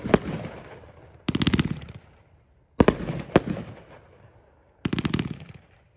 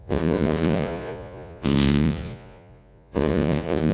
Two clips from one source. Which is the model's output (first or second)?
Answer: second